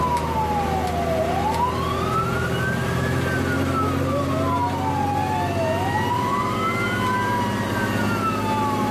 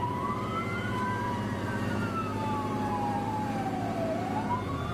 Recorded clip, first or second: first